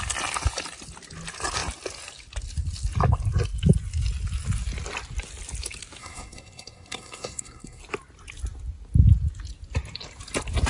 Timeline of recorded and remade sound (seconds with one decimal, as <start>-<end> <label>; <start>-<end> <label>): 0.0-6.0 recorded; 6.0-7.8 remade; 7.8-10.7 recorded